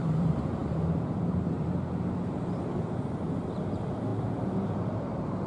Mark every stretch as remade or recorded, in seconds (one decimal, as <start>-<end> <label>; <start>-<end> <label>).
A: 0.0-5.5 remade